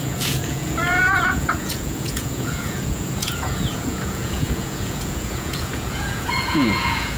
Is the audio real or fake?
fake